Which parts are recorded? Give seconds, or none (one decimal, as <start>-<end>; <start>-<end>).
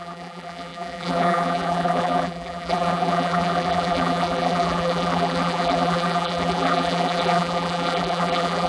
none